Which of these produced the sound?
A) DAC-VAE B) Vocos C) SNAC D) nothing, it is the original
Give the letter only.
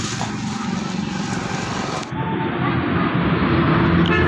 D